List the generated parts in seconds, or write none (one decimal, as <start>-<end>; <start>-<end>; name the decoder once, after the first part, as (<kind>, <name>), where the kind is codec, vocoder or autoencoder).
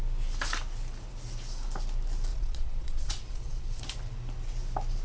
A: 2.3-3.8 (vocoder, Vocos)